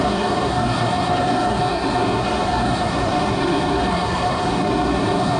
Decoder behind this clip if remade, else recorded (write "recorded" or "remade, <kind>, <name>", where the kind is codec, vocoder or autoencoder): remade, codec, SNAC